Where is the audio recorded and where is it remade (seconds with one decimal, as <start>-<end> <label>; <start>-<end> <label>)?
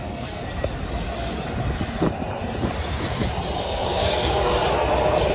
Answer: 0.0-0.4 remade; 0.4-3.6 recorded; 3.6-4.5 remade; 4.5-5.3 recorded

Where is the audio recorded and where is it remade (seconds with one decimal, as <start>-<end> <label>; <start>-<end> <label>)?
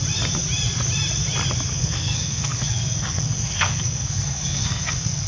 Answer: 0.0-1.7 recorded; 1.7-5.3 remade